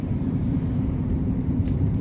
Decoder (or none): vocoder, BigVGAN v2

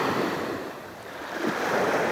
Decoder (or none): none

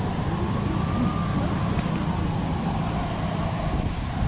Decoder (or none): none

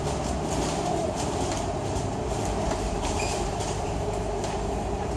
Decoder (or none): vocoder, BigVGAN v2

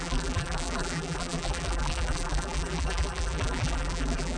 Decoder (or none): vocoder, BigVGAN v2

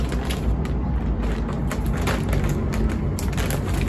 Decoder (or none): none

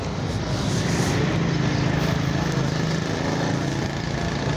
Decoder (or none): none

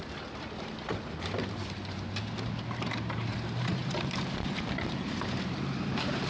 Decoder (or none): vocoder, BigVGAN v2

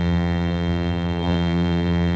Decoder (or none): vocoder, BigVGAN v2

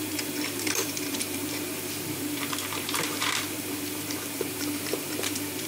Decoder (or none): vocoder, BigVGAN v2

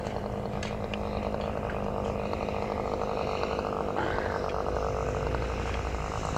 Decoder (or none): none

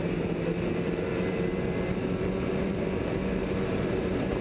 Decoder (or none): vocoder, BigVGAN v2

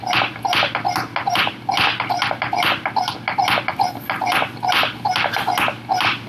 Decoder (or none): none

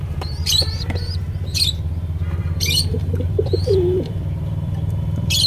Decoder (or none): vocoder, BigVGAN v2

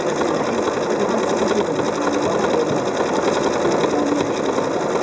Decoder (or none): none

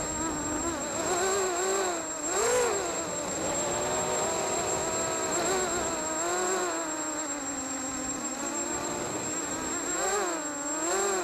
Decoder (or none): none